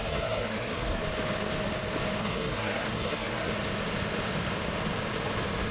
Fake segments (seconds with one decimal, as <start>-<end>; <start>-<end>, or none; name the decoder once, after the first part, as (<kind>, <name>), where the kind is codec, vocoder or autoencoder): 0.0-1.0 (codec, SNAC); 2.2-3.5